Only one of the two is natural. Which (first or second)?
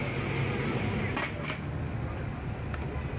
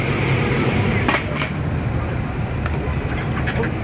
first